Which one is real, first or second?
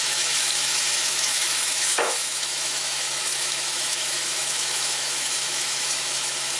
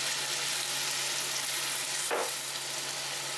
second